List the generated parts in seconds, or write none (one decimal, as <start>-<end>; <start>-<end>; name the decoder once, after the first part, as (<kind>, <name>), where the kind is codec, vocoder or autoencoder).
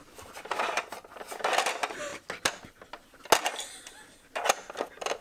none